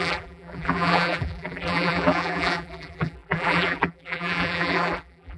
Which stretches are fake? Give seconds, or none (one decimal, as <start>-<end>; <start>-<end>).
0.0-5.4